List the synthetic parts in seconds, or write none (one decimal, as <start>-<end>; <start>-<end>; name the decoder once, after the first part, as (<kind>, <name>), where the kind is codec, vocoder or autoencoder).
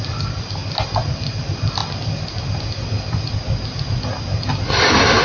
0.0-0.6 (vocoder, BigVGAN v2); 1.1-1.8